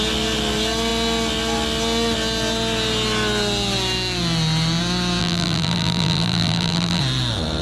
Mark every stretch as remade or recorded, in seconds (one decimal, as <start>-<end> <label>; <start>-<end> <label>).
0.0-5.2 recorded; 5.2-7.0 remade; 7.0-7.6 recorded